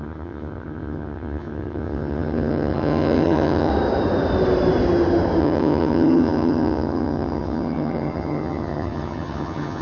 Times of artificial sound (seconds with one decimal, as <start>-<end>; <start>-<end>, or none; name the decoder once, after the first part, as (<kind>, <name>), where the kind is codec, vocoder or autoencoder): 0.0-3.7 (vocoder, HiFi-GAN); 5.4-9.8